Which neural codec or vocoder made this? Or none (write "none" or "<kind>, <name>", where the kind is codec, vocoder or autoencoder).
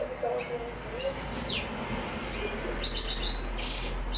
none